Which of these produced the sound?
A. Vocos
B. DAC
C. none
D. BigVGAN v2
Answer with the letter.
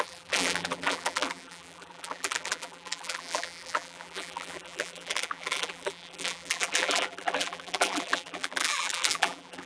D